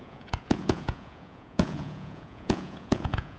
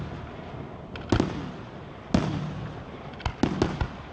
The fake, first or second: first